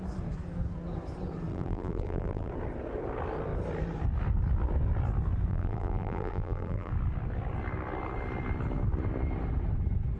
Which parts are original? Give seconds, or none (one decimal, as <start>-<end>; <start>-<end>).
0.0-1.5; 2.5-5.5; 6.9-10.2

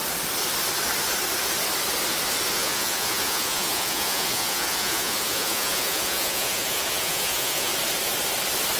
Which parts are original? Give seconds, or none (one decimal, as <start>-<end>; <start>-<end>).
0.0-2.5; 7.7-8.8